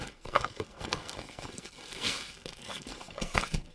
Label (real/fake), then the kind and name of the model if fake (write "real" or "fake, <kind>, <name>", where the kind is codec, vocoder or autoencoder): fake, codec, SNAC